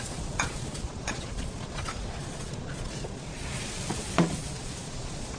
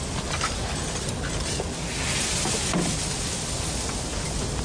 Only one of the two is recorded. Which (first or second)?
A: second